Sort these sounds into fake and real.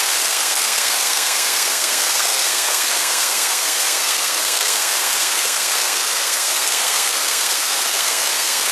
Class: fake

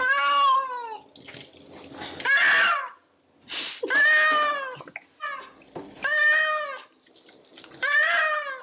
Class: real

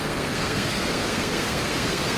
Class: fake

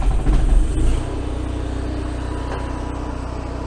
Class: real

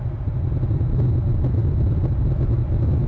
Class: real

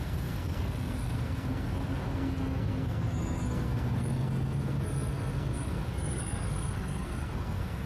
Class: fake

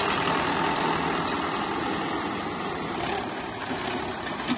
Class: real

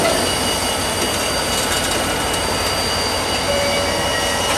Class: real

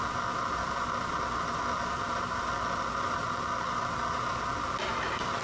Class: real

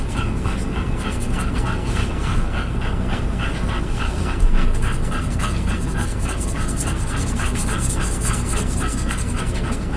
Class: fake